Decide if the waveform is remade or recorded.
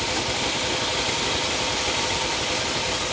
recorded